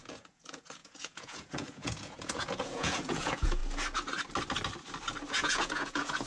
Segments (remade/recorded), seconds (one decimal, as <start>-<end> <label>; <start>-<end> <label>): 0.0-3.6 remade; 3.6-5.3 recorded; 5.3-6.3 remade